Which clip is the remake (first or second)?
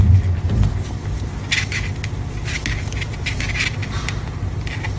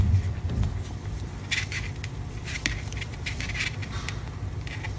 second